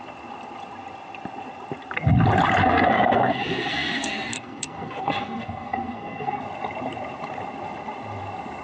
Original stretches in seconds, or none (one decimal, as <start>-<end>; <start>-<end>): 0.0-2.6; 6.4-8.6